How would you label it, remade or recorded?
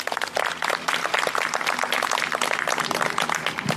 remade